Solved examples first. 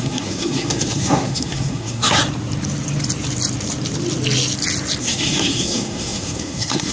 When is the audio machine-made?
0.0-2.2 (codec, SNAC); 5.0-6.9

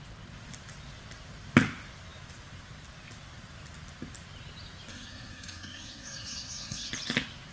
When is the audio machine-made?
4.9-6.9 (codec, SNAC)

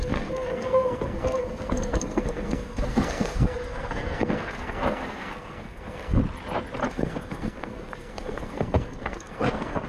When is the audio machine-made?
0.0-6.2 (codec, SNAC); 6.9-9.9

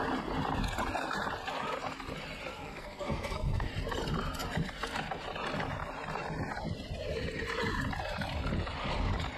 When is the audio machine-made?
2.5-3.7 (codec, SNAC)

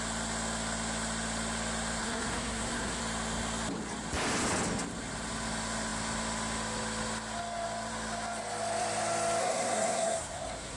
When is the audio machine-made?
2.0-3.0 (codec, SNAC); 9.4-10.8